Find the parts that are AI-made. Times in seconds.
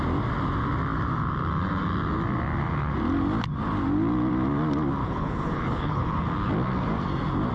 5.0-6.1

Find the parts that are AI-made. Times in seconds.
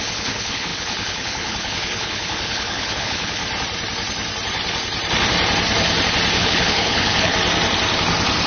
0.0-3.4; 6.4-7.3